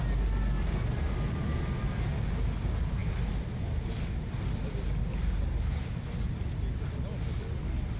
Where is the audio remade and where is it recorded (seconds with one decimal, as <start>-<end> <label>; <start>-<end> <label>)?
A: 0.0-8.0 recorded